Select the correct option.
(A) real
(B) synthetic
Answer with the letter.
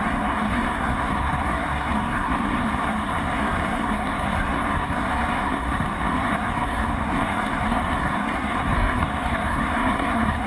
B